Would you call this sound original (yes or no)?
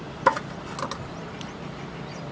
yes